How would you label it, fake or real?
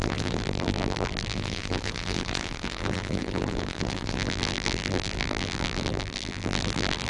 fake